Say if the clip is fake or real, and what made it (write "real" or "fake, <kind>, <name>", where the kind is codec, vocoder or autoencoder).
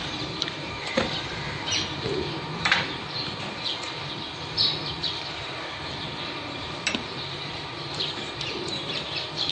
fake, vocoder, BigVGAN v2